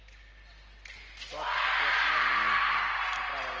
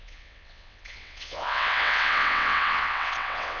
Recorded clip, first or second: first